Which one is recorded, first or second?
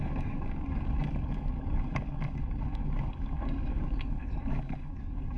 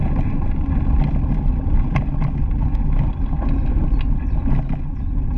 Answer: second